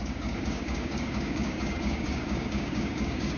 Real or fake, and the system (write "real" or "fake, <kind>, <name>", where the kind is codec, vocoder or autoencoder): fake, codec, DAC